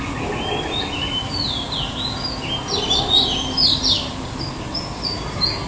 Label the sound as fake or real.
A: real